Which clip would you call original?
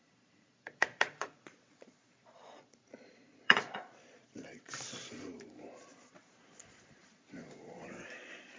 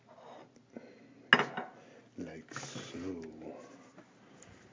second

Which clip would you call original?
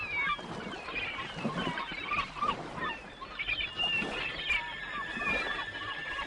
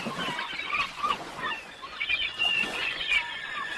first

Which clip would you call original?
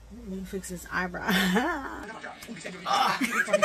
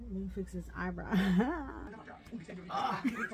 second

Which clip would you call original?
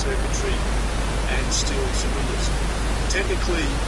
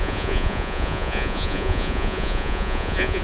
first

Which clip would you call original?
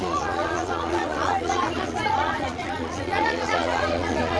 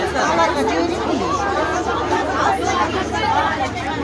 second